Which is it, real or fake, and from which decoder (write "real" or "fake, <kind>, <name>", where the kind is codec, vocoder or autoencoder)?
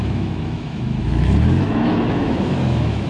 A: fake, autoencoder, DAC-VAE